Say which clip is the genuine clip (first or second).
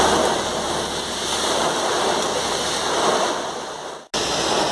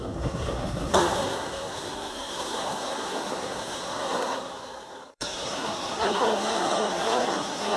first